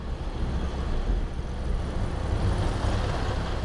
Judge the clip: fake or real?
real